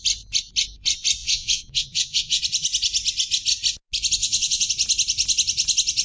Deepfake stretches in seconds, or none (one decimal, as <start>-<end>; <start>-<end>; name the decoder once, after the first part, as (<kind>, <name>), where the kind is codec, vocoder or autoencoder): 1.2-2.4 (vocoder, Vocos); 4.2-4.7